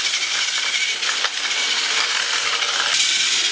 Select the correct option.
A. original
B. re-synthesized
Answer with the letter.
A